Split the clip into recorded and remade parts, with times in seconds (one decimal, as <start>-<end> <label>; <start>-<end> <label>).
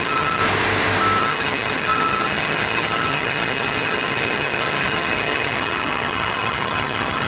0.0-0.4 remade; 0.4-1.2 recorded; 1.2-7.3 remade